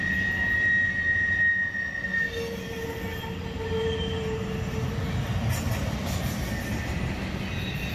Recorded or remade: recorded